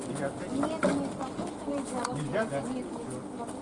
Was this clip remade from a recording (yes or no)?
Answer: no